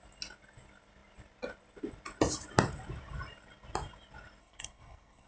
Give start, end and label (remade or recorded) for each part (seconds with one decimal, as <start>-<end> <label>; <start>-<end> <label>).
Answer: 0.0-4.4 recorded; 4.4-5.3 remade